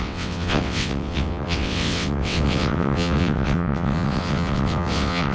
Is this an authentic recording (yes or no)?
no